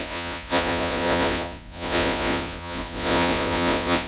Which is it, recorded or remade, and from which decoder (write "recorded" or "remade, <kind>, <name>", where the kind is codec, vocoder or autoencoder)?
remade, vocoder, Vocos